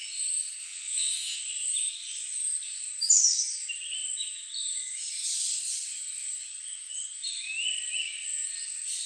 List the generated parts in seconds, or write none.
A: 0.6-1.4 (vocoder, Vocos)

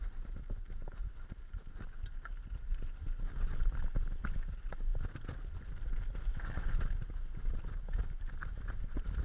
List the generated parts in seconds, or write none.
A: none